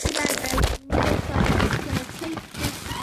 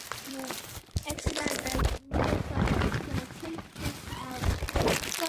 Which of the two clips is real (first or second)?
first